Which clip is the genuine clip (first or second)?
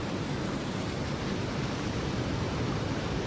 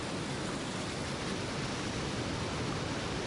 second